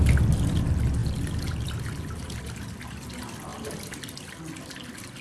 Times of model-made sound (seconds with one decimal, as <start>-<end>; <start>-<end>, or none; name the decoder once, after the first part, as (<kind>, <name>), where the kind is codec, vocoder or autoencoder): none